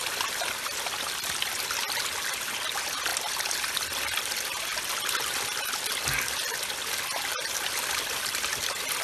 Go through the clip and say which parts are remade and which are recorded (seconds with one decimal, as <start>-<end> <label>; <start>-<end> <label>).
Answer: 0.0-9.0 recorded